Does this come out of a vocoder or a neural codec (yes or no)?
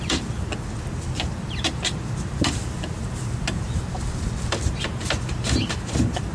no